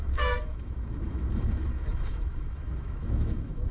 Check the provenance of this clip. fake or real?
fake